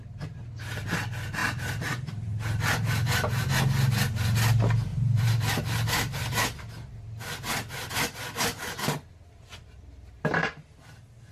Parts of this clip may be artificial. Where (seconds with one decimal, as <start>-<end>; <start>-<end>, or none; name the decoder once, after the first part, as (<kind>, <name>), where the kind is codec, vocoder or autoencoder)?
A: 1.4-3.6 (vocoder, BigVGAN v2); 4.9-6.6